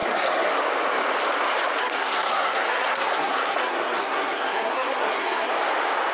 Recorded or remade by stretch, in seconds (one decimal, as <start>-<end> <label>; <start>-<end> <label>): 0.0-0.5 remade; 0.5-1.8 recorded; 1.8-5.5 remade; 5.5-6.1 recorded